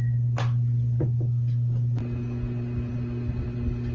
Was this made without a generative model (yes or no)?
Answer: yes